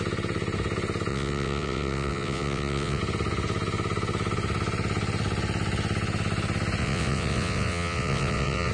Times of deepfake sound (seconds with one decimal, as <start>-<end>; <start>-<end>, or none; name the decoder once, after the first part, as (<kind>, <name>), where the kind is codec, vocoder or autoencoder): 1.1-3.0 (vocoder, WaveNeXt); 6.8-8.7